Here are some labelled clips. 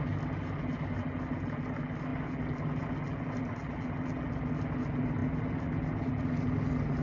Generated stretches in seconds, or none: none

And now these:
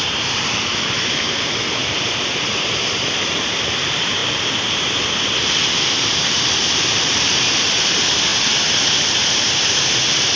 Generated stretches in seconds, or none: 0.0-4.2 (vocoder, BigVGAN v2); 6.0-8.3; 9.2-10.4